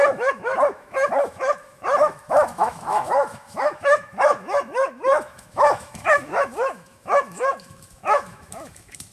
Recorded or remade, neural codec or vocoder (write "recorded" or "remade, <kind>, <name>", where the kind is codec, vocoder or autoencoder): remade, autoencoder, DAC-VAE